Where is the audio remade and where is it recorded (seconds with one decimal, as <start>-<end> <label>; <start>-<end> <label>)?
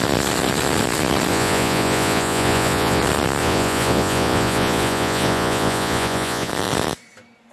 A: 0.0-1.3 recorded; 1.3-3.0 remade; 3.0-3.4 recorded; 3.4-6.5 remade; 6.5-7.5 recorded